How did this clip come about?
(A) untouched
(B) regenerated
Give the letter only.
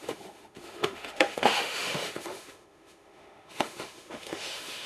B